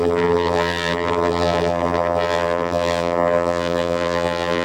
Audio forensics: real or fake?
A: fake